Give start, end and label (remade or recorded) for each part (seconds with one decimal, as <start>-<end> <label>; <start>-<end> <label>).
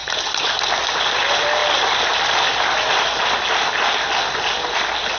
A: 0.0-5.2 recorded